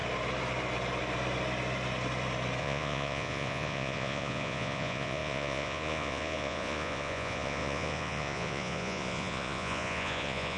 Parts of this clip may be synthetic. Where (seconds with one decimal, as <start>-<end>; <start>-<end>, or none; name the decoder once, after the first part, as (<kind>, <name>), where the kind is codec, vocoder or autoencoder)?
2.6-10.6 (vocoder, Vocos)